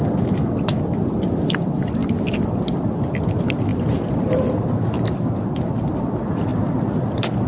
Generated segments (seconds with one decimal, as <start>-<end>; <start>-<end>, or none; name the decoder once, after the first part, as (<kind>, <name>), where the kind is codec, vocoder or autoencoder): none